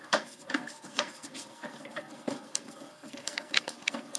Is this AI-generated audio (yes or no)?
yes